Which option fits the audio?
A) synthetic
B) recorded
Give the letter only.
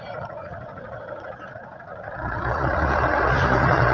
A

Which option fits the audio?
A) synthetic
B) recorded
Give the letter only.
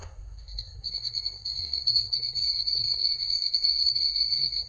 A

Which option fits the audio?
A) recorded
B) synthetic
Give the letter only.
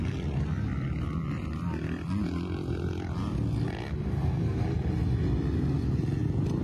A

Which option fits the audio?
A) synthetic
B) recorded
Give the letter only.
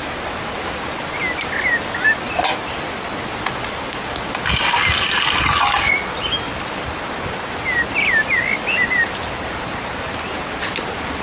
B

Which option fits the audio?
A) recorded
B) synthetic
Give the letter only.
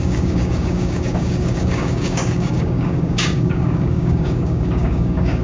B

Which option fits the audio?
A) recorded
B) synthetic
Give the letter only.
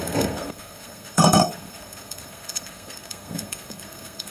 B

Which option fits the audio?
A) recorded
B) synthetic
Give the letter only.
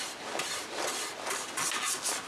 A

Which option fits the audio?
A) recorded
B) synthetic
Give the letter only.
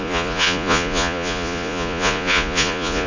B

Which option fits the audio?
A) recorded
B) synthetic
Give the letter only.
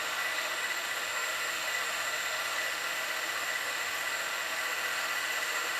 B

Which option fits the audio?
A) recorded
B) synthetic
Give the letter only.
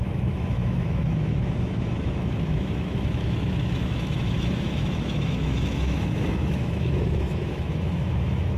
B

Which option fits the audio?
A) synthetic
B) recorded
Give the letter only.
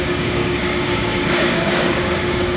A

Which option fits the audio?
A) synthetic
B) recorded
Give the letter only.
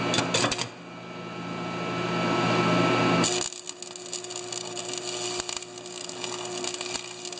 B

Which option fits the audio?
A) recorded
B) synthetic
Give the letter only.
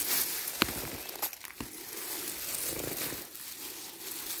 A